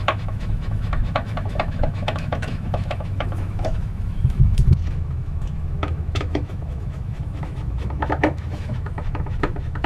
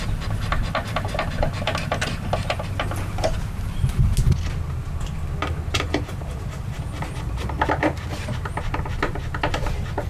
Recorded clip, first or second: second